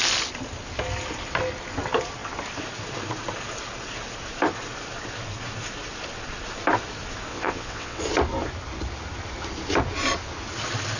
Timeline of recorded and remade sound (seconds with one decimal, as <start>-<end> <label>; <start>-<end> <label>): 0.0-7.3 recorded; 7.3-8.0 remade; 8.0-11.0 recorded